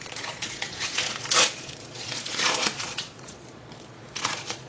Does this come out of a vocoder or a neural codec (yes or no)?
yes